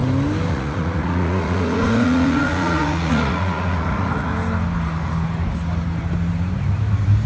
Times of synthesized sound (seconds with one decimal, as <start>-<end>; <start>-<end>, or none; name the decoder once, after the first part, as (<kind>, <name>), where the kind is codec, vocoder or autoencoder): 0.5-4.3 (vocoder, Vocos)